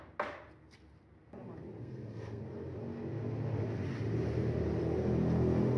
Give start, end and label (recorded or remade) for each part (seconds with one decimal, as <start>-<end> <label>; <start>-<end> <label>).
0.0-1.8 recorded; 1.8-2.4 remade; 2.4-5.8 recorded